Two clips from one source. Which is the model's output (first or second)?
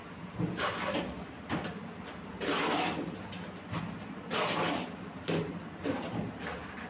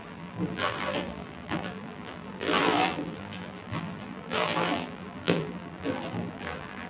second